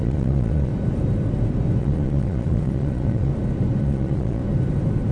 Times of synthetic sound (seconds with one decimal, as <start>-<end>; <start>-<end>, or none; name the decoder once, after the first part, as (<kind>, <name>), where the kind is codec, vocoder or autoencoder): 0.0-0.7 (vocoder, Vocos); 1.8-3.3; 3.8-4.4